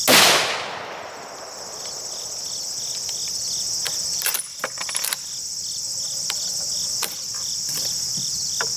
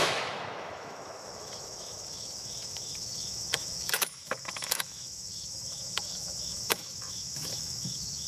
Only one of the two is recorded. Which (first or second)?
first